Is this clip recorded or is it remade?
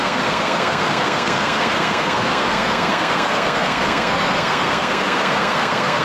remade